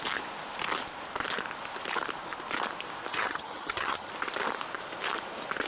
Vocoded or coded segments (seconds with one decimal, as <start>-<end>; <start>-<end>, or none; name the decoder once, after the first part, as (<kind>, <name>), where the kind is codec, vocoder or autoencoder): 3.1-4.1 (vocoder, HiFi-GAN)